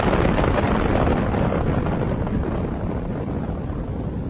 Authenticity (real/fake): real